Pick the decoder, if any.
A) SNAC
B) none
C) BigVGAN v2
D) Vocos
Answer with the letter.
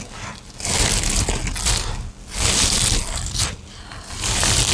B